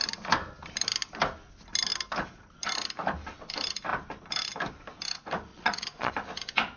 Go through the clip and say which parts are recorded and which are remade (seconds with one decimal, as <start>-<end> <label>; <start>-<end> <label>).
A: 0.0-5.5 recorded; 5.5-6.1 remade; 6.1-6.8 recorded